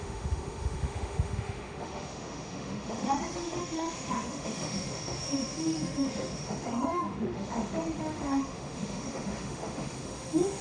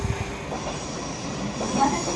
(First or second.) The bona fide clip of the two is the second